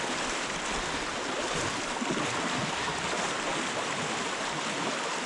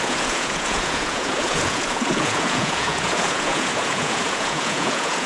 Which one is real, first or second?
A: first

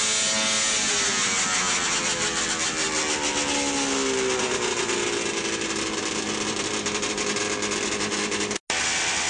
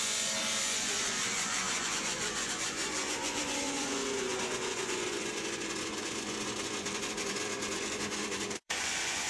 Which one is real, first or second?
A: first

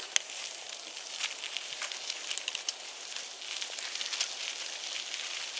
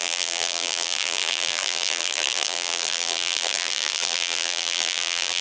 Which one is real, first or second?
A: first